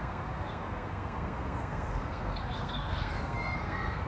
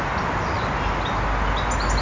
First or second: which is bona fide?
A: second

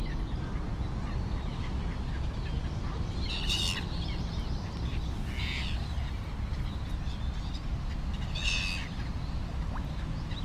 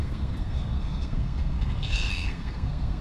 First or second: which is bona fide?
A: first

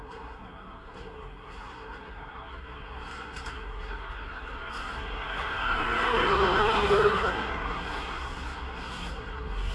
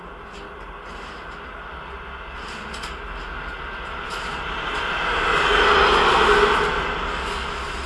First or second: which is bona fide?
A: second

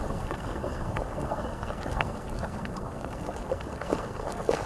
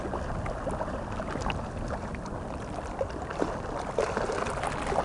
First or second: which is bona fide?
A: second